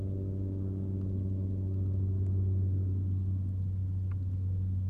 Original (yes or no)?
yes